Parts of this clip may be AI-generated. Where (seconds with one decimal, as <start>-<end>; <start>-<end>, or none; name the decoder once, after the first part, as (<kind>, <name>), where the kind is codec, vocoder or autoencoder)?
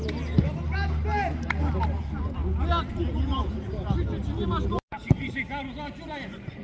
none